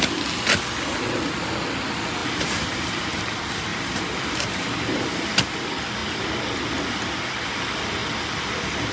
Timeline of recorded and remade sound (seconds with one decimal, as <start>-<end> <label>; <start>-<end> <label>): 0.0-2.2 recorded; 2.2-3.2 remade; 3.2-3.7 recorded; 3.7-5.0 remade; 5.0-8.9 recorded